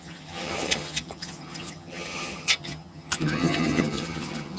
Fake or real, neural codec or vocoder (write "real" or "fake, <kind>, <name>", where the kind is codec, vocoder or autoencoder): fake, vocoder, HiFi-GAN